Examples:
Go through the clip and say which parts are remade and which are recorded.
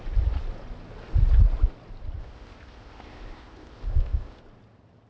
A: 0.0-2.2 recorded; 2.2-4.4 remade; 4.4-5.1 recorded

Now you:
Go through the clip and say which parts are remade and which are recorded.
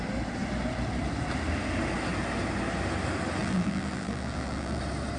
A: 0.0-3.4 recorded; 3.4-4.8 remade; 4.8-5.2 recorded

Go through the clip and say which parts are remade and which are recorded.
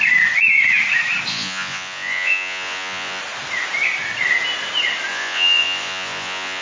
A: 0.0-1.3 recorded; 1.3-3.2 remade; 3.2-5.1 recorded; 5.1-6.6 remade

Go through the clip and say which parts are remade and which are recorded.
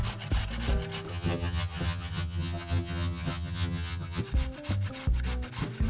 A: 0.0-1.1 recorded; 1.1-4.2 remade; 4.2-5.9 recorded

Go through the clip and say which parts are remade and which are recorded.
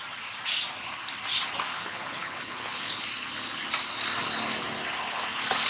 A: 0.0-1.7 recorded; 1.7-3.0 remade; 3.0-5.7 recorded